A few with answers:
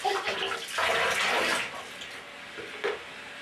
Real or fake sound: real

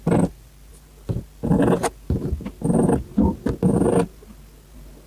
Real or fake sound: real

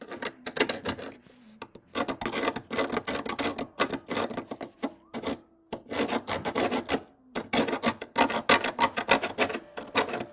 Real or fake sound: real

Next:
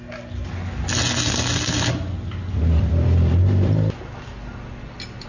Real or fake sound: real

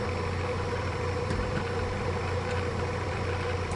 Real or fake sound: fake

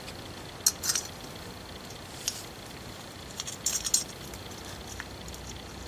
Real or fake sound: real